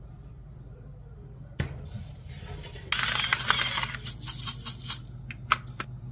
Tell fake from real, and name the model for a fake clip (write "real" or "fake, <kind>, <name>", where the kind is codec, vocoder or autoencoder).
real